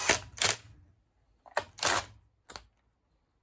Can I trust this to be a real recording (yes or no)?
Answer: yes